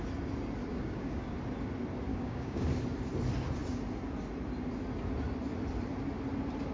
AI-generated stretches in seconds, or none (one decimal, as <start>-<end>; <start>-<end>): 0.7-1.3; 2.1-2.7